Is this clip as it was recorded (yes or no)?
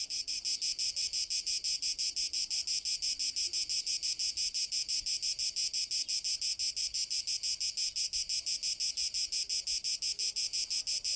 yes